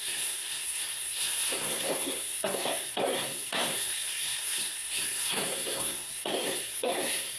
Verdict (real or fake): fake